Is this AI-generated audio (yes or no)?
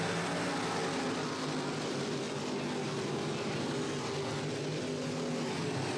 no